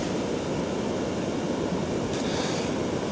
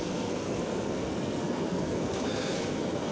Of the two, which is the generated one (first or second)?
second